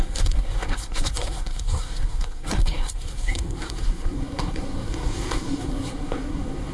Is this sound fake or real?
fake